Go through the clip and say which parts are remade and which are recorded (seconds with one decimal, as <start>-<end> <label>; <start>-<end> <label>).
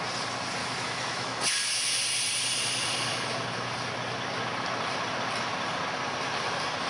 0.0-0.6 recorded; 0.6-1.4 remade; 1.4-6.9 recorded